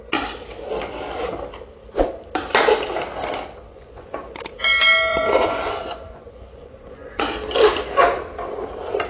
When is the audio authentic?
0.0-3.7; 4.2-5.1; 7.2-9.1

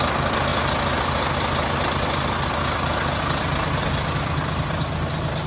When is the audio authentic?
0.0-5.5